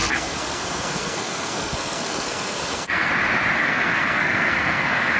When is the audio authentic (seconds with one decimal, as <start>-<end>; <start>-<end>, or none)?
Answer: 3.1-3.6